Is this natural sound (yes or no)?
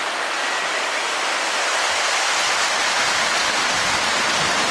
yes